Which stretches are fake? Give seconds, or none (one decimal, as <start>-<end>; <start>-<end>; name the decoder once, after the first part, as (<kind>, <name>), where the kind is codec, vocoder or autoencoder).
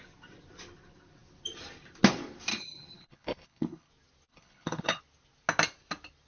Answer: 2.5-3.9 (codec, HILCodec); 4.3-5.0